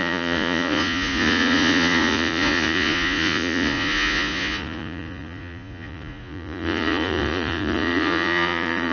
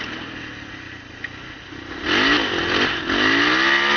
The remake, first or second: first